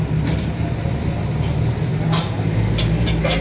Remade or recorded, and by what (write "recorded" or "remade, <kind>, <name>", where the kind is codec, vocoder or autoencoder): recorded